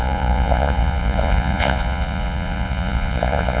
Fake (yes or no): yes